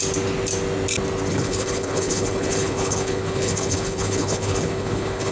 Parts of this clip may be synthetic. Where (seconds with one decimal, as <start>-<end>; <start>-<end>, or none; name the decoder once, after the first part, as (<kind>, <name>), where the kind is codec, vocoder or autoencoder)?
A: 1.3-5.3 (codec, HILCodec)